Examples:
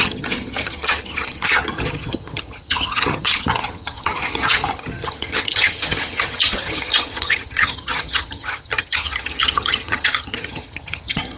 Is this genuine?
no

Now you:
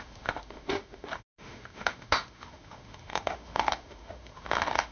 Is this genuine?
no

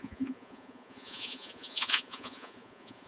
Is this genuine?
no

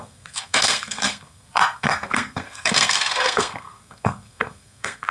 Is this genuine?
no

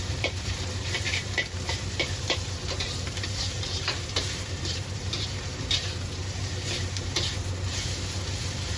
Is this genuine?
no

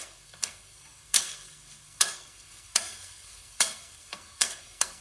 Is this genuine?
no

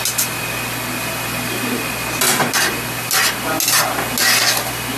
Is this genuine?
yes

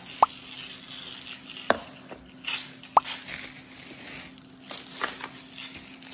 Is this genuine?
yes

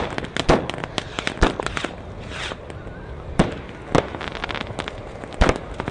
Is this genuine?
yes